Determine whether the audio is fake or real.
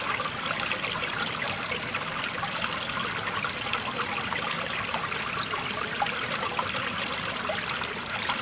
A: real